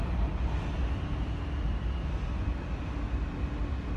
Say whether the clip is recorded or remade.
recorded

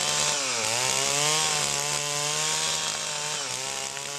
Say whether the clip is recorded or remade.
recorded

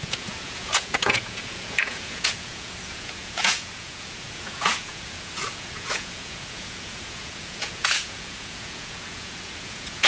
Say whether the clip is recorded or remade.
remade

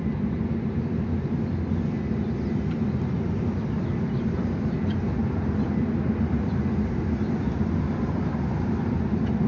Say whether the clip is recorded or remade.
recorded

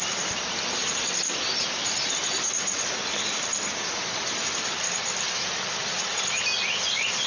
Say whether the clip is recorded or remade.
recorded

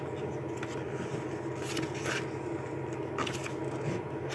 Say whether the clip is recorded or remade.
recorded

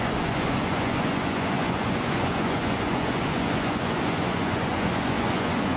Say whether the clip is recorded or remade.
remade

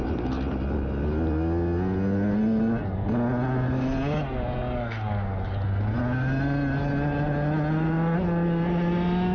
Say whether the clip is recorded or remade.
recorded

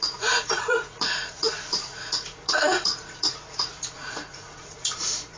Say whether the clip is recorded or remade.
remade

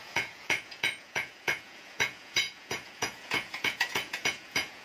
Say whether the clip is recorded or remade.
remade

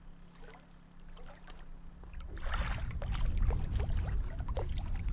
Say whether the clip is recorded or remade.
recorded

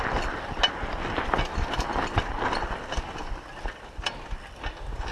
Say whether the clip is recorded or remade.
recorded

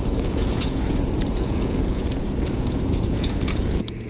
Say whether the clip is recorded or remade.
remade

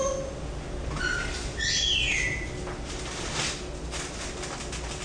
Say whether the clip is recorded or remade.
recorded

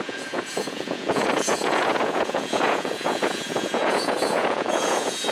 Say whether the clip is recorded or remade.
remade